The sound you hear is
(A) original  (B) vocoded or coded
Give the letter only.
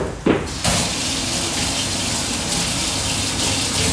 A